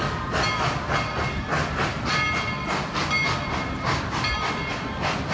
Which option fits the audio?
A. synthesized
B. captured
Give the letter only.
B